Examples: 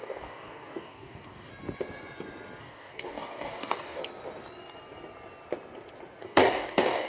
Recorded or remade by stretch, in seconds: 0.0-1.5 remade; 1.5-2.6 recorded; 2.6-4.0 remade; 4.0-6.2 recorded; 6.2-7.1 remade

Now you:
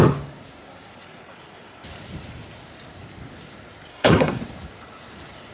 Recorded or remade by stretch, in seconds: 0.0-3.9 recorded; 3.9-4.4 remade; 4.4-5.5 recorded

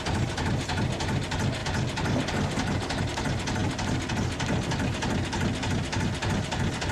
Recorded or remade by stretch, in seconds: 0.0-6.9 recorded

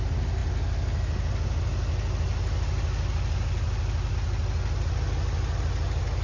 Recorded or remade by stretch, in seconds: 0.0-6.2 recorded

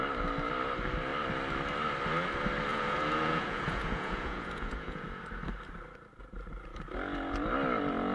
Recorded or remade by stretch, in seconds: 0.0-2.7 recorded; 2.7-5.2 remade; 5.2-8.1 recorded

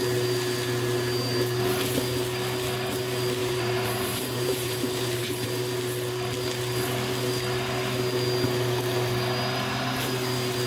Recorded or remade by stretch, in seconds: 0.0-3.4 recorded; 3.4-5.6 remade; 5.6-10.7 recorded

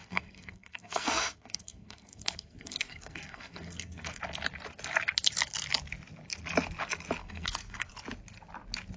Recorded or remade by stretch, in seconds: 0.0-4.2 remade; 4.2-7.2 recorded; 7.2-7.9 remade; 7.9-9.0 recorded

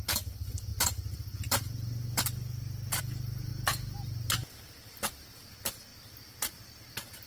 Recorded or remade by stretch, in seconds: 0.0-7.3 recorded